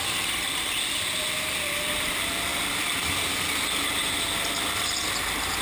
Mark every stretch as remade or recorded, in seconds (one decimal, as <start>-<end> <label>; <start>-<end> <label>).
0.0-2.5 recorded; 2.5-3.1 remade; 3.1-5.6 recorded